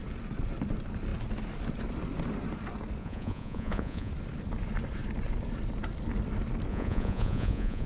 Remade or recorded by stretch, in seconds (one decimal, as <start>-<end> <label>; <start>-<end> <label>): 0.0-3.0 recorded; 3.0-4.1 remade; 4.1-6.7 recorded; 6.7-7.9 remade